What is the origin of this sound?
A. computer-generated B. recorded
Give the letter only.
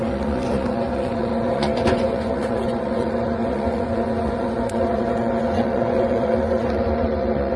A